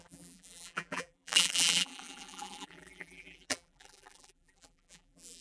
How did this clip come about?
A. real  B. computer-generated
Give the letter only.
B